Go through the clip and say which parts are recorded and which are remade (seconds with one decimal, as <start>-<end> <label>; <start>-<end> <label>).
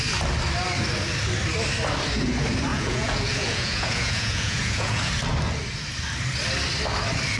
0.0-2.7 recorded; 2.7-5.1 remade; 5.1-7.4 recorded